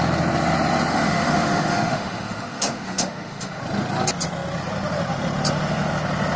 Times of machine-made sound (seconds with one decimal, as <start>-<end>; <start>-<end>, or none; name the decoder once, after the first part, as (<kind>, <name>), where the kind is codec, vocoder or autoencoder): 0.9-3.6 (autoencoder, DAC-VAE)